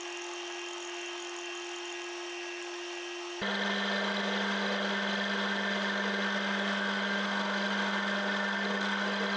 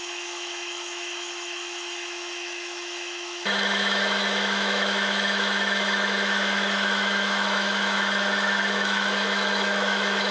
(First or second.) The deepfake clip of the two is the second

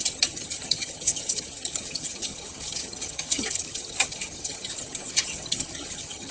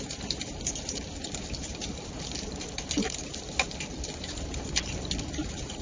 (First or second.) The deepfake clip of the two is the first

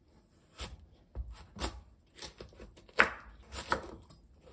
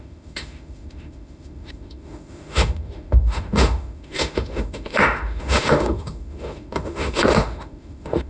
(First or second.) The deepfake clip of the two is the second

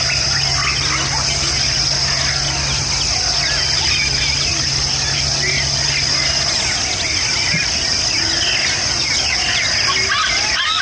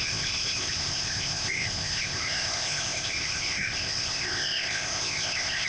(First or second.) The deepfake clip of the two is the second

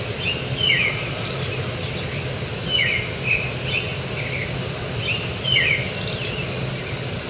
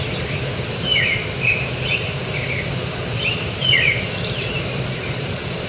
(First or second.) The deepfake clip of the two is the second